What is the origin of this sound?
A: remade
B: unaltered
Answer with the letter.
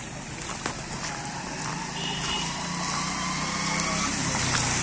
B